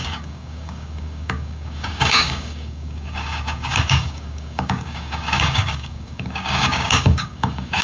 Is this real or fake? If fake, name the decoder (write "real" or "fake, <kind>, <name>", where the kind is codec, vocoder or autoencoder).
fake, codec, DAC